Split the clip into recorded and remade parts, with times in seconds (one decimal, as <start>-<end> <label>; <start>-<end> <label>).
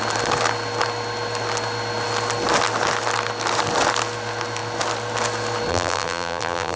0.0-5.7 recorded; 5.7-6.8 remade